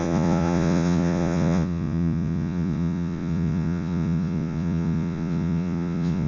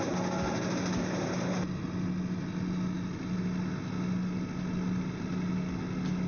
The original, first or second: second